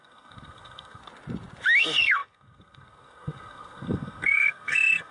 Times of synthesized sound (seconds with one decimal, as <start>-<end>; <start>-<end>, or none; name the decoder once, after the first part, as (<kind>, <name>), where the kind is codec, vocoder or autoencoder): 0.0-1.0 (codec, SNAC); 1.8-5.1

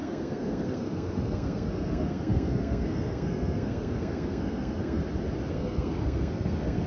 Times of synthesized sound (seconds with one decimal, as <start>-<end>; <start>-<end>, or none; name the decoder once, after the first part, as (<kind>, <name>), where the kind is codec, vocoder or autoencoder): 0.0-5.0 (codec, SNAC); 5.5-6.9

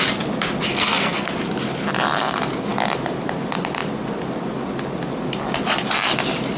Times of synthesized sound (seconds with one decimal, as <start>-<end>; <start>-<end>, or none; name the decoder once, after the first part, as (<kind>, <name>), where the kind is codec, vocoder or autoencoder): 0.7-1.3 (codec, SNAC)

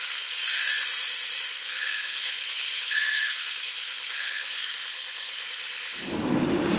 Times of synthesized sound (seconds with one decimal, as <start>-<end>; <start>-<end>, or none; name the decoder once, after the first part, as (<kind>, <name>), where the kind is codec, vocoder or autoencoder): 0.0-0.7 (codec, SNAC); 1.4-5.4

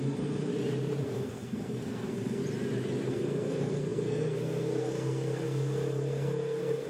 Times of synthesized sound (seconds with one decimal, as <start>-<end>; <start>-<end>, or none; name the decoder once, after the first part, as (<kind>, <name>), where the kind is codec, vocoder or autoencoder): 0.0-0.5 (codec, SNAC); 1.0-2.4; 3.1-6.9

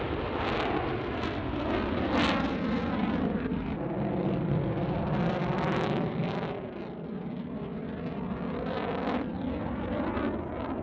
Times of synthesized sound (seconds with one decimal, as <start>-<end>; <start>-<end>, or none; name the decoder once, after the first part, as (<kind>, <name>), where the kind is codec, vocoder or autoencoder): none

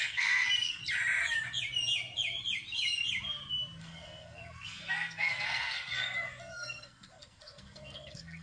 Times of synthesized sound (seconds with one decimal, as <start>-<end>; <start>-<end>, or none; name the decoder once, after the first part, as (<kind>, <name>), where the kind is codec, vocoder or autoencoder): 0.0-0.8 (codec, SNAC); 3.8-8.4